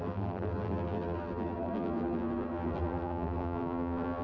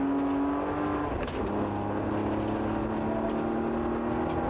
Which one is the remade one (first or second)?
first